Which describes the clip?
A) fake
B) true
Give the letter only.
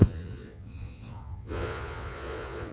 A